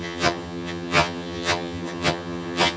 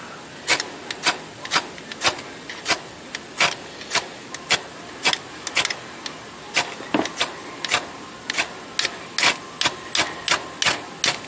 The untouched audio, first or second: second